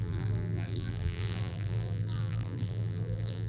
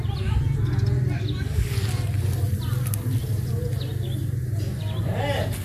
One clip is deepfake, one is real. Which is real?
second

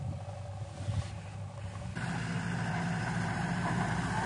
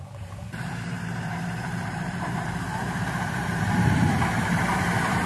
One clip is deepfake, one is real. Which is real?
first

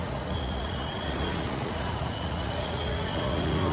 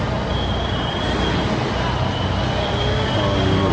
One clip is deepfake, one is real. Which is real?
second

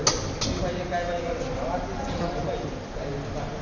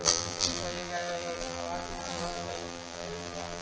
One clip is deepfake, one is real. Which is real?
first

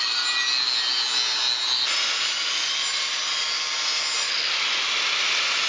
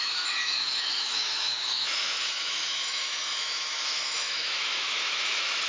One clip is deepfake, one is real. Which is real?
first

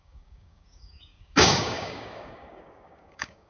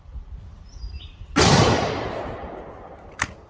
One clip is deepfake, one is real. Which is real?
second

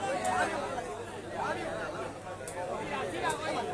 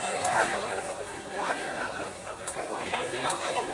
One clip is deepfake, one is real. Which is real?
first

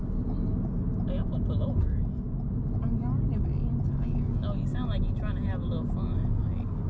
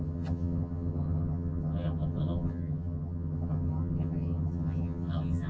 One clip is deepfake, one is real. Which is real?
first